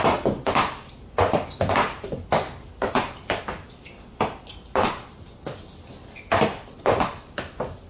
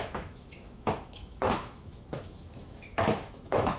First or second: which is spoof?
second